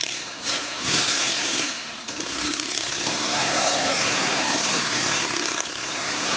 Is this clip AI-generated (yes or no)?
yes